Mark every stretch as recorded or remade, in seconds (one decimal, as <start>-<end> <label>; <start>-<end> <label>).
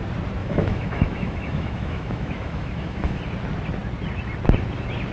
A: 0.0-0.4 recorded; 0.4-3.2 remade; 3.2-5.1 recorded